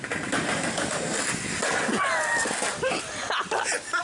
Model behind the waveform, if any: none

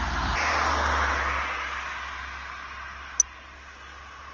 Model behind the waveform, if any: none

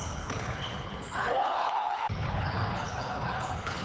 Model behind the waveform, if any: codec, HILCodec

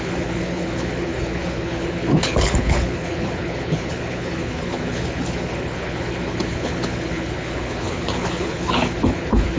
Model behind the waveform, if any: codec, HILCodec